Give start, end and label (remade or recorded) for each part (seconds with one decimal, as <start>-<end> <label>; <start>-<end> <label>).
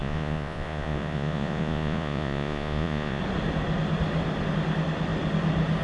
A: 0.0-3.2 remade; 3.2-5.8 recorded